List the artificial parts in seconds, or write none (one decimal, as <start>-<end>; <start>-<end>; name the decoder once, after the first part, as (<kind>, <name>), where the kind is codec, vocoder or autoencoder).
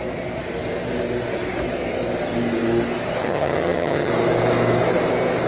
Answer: 3.2-4.1 (vocoder, HiFi-GAN)